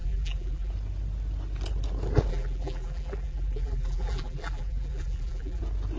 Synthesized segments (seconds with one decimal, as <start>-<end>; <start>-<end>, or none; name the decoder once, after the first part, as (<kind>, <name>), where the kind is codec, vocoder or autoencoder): 0.0-0.7 (vocoder, BigVGAN v2); 2.3-5.6